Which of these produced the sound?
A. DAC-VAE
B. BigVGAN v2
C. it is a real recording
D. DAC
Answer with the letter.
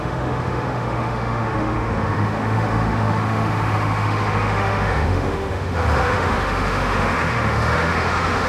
A